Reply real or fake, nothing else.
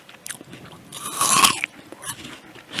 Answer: real